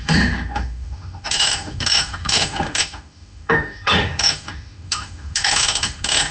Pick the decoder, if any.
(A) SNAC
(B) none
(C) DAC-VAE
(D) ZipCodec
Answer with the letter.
C